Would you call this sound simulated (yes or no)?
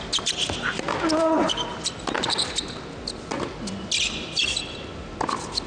no